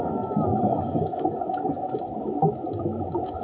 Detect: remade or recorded remade